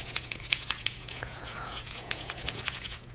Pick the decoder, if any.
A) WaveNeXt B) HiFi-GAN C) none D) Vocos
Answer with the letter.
D